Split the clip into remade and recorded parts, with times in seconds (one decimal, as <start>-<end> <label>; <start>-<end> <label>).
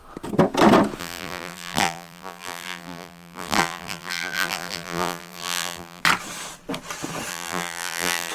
0.0-1.0 recorded; 1.0-6.0 remade; 6.0-7.3 recorded; 7.3-8.3 remade